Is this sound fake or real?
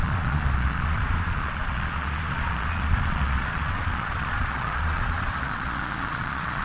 fake